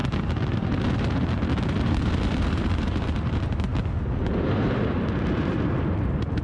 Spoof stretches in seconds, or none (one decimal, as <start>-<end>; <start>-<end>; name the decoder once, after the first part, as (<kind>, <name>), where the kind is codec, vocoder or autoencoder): 0.0-3.7 (vocoder, BigVGAN v2); 4.3-6.4